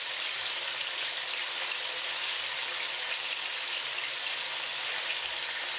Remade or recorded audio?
recorded